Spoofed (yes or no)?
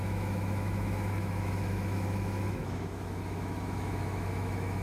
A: yes